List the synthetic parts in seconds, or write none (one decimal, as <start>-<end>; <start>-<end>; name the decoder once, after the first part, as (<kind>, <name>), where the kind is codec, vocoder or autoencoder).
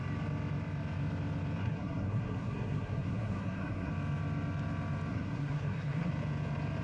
1.6-3.9 (codec, SNAC); 5.1-6.1